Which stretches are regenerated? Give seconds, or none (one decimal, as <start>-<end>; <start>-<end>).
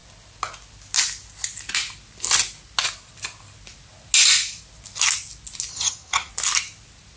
5.7-6.3